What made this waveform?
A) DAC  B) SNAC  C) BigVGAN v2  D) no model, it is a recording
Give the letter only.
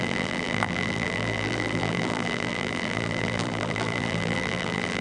C